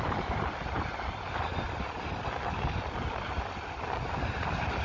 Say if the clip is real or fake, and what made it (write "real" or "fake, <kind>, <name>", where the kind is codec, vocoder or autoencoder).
real